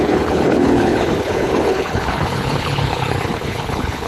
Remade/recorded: remade